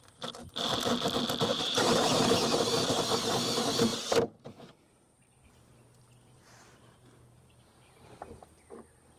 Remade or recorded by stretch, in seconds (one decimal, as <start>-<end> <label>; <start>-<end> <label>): 0.0-1.5 recorded; 1.5-3.0 remade; 3.0-3.9 recorded; 3.9-8.2 remade; 8.2-9.2 recorded